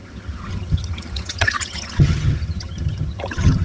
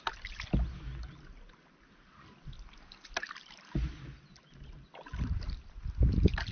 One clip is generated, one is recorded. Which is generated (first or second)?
first